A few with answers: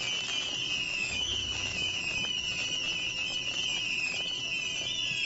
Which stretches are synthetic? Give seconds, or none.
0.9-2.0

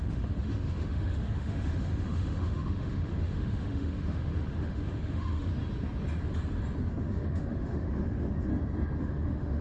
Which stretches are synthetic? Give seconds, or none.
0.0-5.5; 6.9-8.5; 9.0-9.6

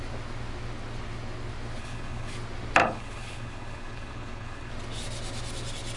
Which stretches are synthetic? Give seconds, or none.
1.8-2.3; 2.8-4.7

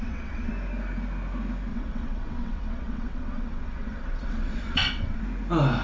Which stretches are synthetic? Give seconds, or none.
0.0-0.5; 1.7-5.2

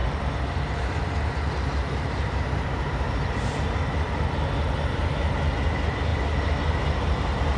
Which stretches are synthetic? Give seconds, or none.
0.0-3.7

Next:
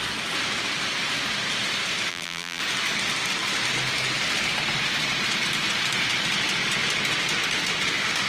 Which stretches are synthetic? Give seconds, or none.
2.1-2.6

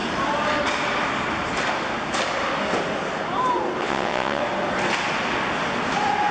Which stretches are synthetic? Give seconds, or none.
3.8-4.4

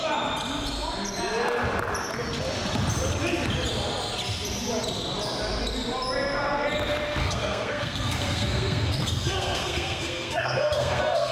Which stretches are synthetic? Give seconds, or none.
7.2-11.3